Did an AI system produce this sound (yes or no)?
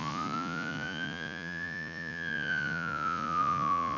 yes